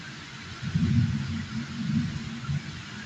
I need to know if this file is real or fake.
fake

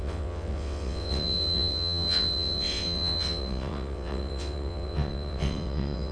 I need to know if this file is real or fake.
fake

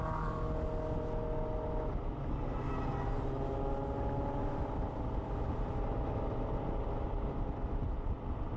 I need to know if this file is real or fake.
real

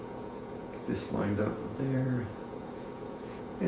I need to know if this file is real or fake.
fake